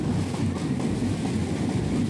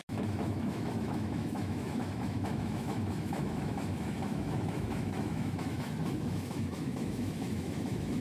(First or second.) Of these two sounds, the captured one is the first